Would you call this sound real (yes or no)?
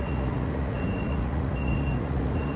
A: no